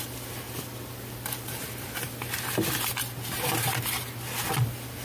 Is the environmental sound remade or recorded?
recorded